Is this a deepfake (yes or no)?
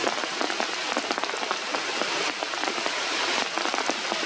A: no